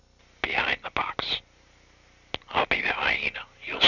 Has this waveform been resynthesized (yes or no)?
no